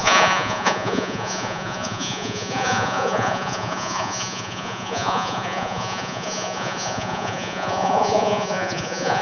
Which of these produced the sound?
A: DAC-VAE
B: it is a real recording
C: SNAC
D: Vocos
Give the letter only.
D